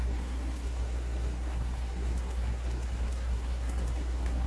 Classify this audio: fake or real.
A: fake